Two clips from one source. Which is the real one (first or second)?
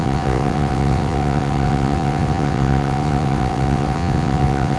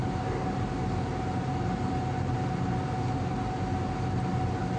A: second